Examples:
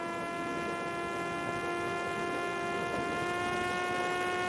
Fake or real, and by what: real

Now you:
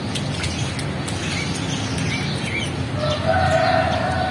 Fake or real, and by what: real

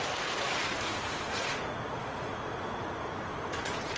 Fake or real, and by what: fake, vocoder, Vocos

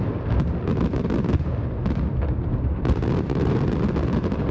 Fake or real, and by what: real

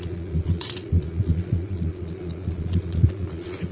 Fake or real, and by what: fake, vocoder, Vocos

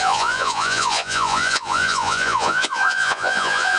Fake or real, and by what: fake, vocoder, Vocos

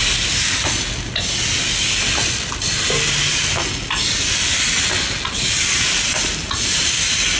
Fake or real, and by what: real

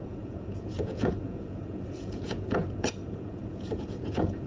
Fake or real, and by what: fake, vocoder, Vocos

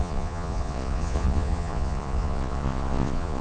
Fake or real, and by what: fake, vocoder, Vocos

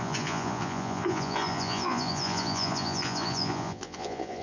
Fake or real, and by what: fake, vocoder, Vocos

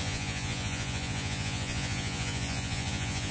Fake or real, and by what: fake, vocoder, Vocos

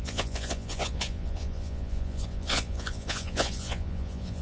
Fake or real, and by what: fake, vocoder, Vocos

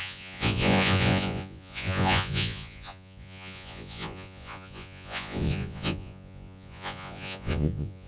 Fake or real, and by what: fake, vocoder, Vocos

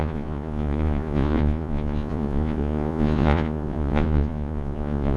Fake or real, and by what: fake, vocoder, Vocos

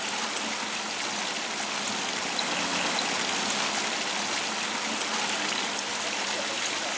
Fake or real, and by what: real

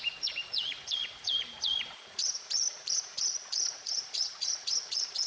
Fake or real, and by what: fake, vocoder, Vocos